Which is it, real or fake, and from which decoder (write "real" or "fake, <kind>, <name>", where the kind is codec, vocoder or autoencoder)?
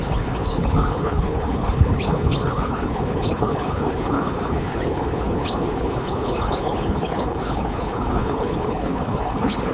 fake, codec, HILCodec